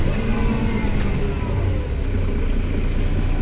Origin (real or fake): real